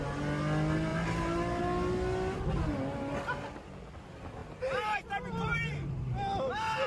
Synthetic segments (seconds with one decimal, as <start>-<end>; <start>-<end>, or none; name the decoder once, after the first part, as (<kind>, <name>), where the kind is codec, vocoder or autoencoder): 0.9-1.6 (vocoder, BigVGAN v2); 4.4-6.9